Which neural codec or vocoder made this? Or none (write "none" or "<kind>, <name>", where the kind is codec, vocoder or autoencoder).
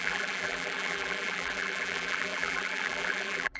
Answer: vocoder, BigVGAN v2